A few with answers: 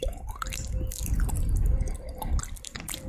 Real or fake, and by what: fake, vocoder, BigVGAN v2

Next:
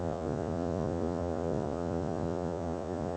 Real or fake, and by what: fake, vocoder, Vocos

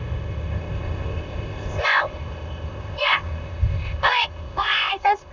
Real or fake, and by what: fake, codec, ZipCodec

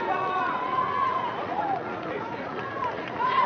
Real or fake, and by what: fake, vocoder, Vocos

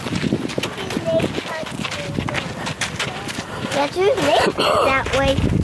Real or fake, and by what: real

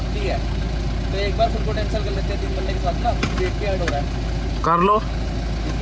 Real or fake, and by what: real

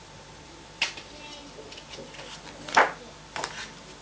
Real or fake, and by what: real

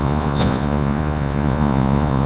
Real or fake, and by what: fake, vocoder, Vocos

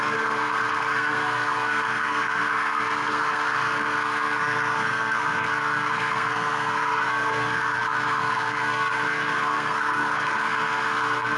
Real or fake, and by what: fake, codec, SNAC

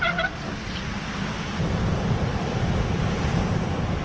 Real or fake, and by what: real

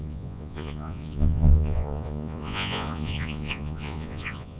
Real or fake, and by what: fake, vocoder, Vocos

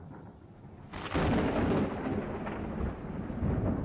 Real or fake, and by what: real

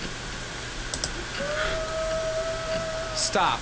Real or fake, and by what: real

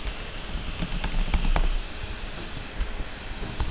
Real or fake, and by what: real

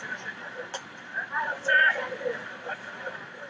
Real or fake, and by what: fake, vocoder, Vocos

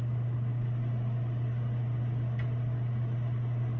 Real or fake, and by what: real